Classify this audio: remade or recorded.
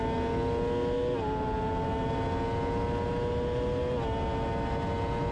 recorded